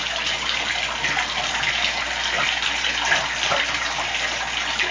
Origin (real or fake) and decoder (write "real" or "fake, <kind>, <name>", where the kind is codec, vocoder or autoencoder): real